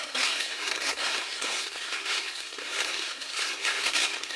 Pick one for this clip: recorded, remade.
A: remade